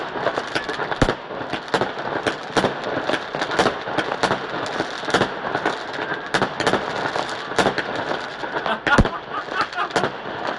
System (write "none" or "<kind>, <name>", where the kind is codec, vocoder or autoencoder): none